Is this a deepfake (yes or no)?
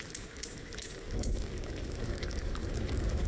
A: yes